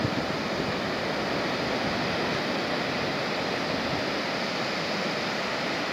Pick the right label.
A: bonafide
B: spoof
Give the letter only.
A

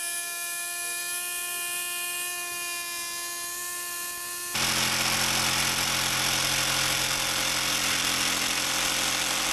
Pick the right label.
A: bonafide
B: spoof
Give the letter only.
A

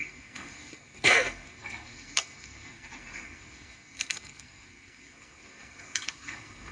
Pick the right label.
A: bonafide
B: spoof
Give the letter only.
B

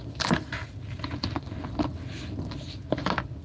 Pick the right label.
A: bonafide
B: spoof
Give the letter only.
A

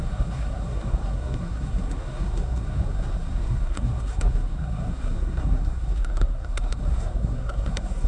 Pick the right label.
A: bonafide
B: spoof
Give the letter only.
B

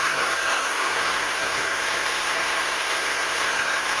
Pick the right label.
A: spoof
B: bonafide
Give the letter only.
A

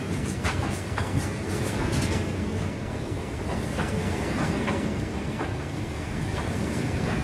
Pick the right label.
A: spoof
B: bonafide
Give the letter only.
A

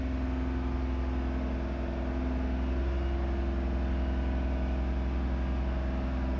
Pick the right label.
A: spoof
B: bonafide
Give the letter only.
B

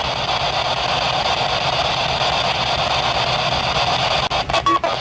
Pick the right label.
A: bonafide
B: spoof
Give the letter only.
A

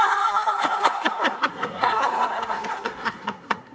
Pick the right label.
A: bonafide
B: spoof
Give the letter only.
B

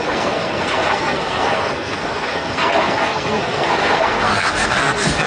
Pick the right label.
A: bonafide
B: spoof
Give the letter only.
B